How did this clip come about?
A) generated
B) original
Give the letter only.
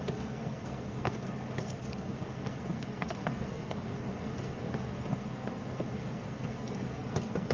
A